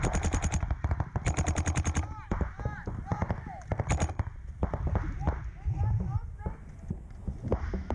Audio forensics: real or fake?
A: real